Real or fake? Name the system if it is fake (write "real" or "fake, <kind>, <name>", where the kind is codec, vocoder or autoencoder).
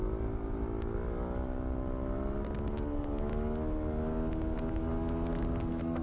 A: real